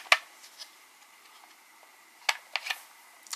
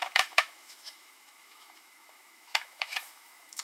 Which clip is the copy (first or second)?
second